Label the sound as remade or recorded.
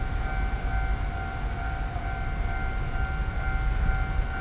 recorded